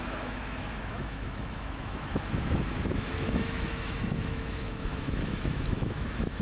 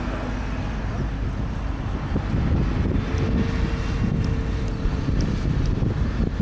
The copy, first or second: first